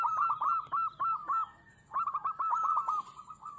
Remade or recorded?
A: recorded